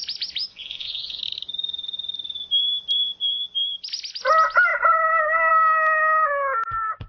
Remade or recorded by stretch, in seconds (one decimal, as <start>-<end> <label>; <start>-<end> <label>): 0.0-0.5 recorded; 0.5-1.2 remade; 1.2-7.1 recorded